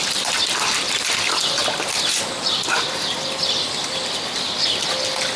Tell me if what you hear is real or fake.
real